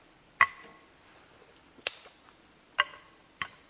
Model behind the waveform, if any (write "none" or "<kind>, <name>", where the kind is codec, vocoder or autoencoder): none